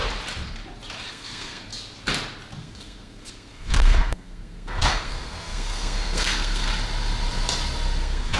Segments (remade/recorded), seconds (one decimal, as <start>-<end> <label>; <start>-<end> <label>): 0.0-1.1 recorded; 1.1-1.7 remade; 1.7-2.6 recorded; 2.6-6.7 remade; 6.7-8.0 recorded; 8.0-8.4 remade